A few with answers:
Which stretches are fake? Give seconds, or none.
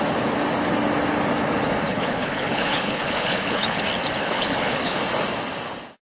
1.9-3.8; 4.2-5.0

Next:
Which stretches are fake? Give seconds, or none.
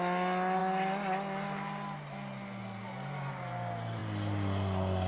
none